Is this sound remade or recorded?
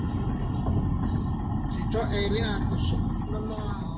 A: recorded